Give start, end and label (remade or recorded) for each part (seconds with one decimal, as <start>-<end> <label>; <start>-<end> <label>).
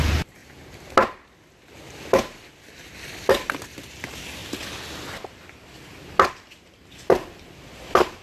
0.0-8.2 recorded